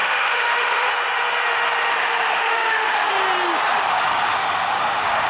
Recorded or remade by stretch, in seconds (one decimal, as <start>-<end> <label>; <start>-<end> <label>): 0.0-0.9 remade; 0.9-1.9 recorded; 1.9-3.1 remade; 3.1-3.8 recorded; 3.8-5.3 remade